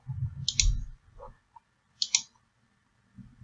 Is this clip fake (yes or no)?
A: no